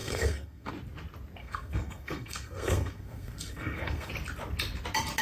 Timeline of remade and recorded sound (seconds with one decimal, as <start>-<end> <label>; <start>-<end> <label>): 0.0-0.7 remade; 0.7-1.4 recorded; 1.4-4.1 remade; 4.1-5.2 recorded